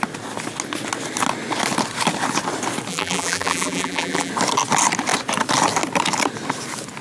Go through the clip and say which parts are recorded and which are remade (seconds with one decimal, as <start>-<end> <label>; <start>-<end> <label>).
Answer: 0.0-2.9 recorded; 2.9-4.3 remade; 4.3-7.0 recorded